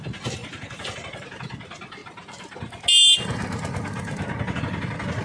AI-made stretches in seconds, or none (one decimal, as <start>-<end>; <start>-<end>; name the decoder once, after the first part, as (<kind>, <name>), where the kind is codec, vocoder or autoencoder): none